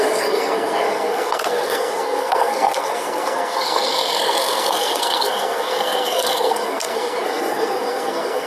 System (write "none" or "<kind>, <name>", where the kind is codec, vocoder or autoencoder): codec, SNAC